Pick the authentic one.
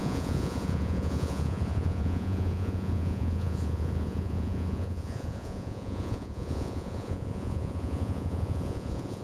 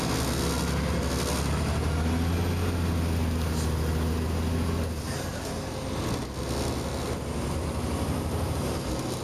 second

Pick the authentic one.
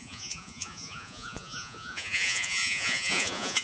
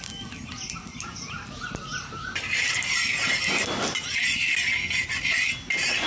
second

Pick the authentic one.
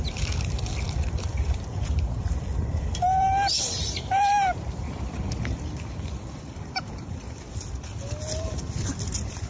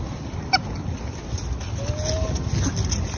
second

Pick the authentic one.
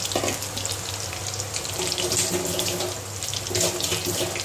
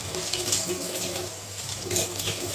first